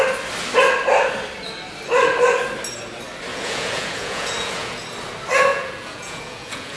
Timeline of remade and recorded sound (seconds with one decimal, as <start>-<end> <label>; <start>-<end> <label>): 0.0-3.3 recorded; 3.3-4.8 remade; 4.8-5.5 recorded; 5.5-6.8 remade